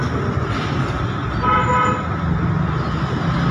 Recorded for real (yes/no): yes